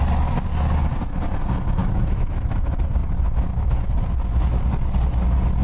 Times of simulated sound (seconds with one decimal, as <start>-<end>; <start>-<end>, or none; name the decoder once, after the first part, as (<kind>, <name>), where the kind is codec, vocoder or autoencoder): 1.8-2.5 (autoencoder, DAC-VAE); 3.0-3.9